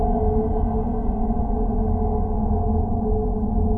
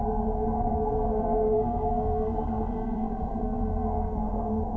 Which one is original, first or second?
first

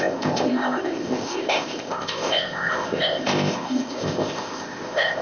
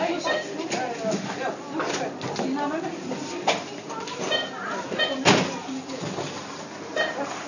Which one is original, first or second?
second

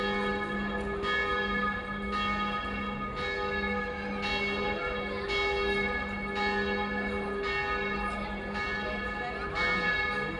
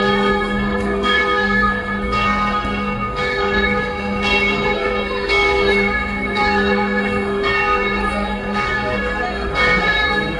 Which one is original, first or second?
first